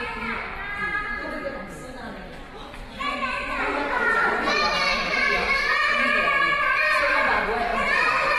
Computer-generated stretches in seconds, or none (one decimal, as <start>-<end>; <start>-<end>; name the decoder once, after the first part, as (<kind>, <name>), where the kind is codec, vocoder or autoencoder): 1.2-5.8 (vocoder, BigVGAN v2); 7.7-8.4

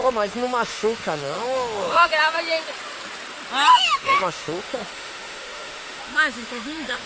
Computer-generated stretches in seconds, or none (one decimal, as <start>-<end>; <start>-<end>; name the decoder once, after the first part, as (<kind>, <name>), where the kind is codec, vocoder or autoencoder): 0.0-2.1 (autoencoder, DAC-VAE); 3.7-7.1

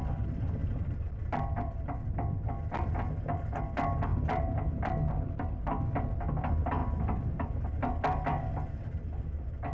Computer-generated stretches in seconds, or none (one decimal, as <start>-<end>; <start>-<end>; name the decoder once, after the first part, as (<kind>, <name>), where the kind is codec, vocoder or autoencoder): none

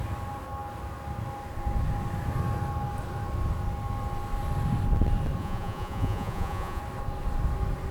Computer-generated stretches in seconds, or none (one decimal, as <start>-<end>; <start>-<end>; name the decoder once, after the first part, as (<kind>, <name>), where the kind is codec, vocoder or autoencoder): 5.4-6.8 (vocoder, Vocos)